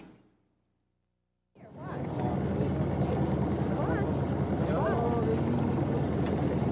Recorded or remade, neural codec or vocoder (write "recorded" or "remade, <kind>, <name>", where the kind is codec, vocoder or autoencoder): recorded